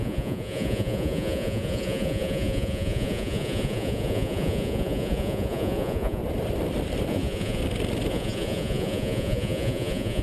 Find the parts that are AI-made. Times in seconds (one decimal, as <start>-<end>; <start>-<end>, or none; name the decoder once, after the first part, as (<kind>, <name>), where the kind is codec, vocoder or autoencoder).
0.0-6.2 (vocoder, Vocos); 7.1-7.6; 8.1-10.2

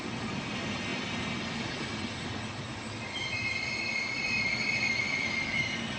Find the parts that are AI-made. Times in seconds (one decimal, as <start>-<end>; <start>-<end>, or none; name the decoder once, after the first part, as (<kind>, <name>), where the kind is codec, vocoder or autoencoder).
none

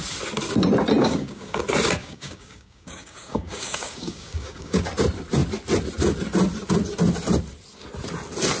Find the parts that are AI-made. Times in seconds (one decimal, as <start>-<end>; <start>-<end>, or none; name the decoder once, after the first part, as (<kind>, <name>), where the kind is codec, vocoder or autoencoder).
1.0-1.6 (codec, DAC); 2.0-4.8

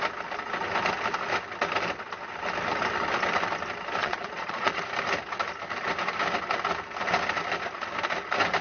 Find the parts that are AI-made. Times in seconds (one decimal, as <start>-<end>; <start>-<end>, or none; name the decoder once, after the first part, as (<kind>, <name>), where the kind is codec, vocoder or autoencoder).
4.0-4.8 (vocoder, Vocos)